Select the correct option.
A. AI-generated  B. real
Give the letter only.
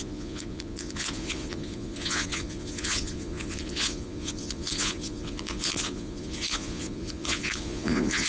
A